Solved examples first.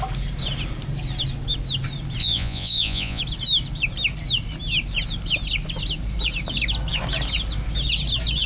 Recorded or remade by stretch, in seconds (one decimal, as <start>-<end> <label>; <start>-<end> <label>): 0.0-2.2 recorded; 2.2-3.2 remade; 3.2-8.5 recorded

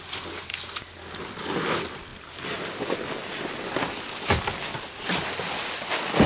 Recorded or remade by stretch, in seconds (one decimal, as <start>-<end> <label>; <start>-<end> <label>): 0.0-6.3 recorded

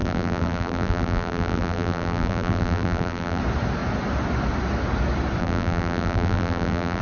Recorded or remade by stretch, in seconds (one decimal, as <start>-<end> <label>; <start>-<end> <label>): 0.0-3.4 remade; 3.4-5.4 recorded; 5.4-7.0 remade

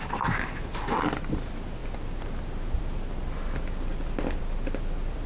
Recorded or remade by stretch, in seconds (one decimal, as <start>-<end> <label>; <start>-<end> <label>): 0.0-5.3 recorded

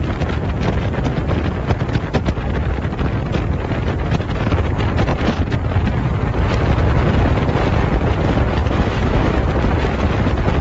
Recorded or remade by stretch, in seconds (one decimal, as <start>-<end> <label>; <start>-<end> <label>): 0.0-8.6 recorded; 8.6-9.4 remade; 9.4-10.6 recorded